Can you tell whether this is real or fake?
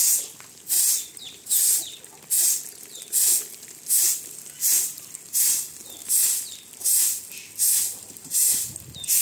real